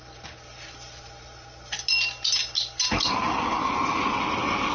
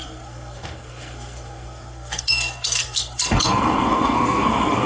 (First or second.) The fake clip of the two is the second